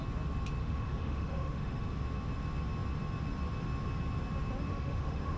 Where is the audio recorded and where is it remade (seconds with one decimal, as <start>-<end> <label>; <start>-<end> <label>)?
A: 0.0-0.6 recorded; 0.6-1.9 remade; 1.9-4.7 recorded; 4.7-5.4 remade